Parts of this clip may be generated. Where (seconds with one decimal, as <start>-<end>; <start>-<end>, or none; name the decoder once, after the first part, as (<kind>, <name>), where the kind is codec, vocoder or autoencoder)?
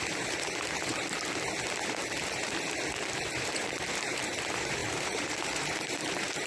0.0-0.9 (vocoder, BigVGAN v2); 3.2-6.5